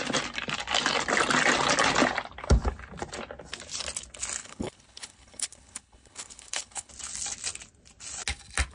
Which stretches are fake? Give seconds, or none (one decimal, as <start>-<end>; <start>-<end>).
4.4-6.9